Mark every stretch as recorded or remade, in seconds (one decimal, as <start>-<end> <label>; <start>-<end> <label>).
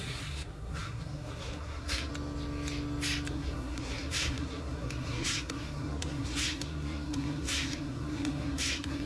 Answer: 0.0-2.1 remade; 2.1-3.3 recorded; 3.3-9.1 remade